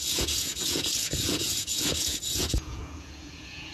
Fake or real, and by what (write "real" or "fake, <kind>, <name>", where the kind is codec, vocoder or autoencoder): fake, vocoder, Vocos